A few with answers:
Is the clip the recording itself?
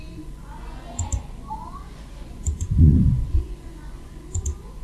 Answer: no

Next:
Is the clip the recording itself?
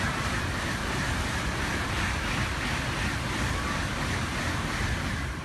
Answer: yes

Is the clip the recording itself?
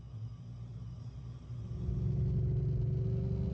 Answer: yes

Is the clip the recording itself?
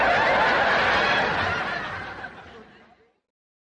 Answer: yes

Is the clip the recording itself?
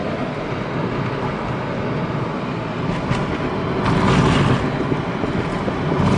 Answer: yes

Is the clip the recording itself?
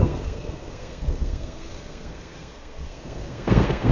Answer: no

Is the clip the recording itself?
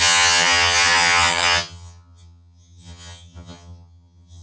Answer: no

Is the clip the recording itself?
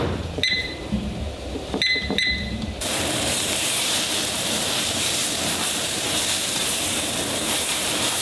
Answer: no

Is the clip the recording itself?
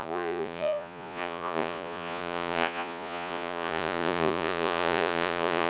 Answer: no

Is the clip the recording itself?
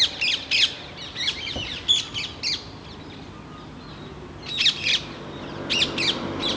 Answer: yes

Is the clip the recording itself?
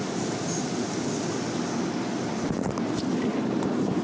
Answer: yes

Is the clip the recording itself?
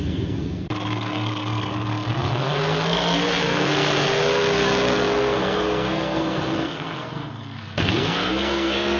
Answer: no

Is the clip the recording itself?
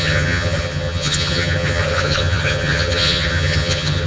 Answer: no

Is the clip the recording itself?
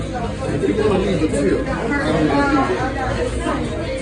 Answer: yes